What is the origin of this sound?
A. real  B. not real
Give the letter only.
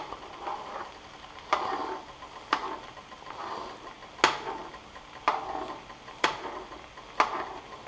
A